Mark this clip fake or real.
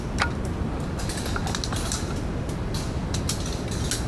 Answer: real